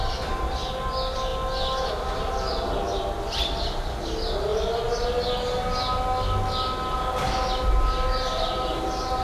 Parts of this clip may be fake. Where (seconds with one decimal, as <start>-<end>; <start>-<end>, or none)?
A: none